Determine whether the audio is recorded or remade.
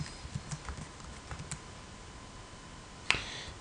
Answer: recorded